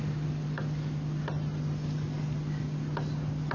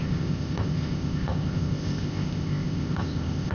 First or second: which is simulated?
second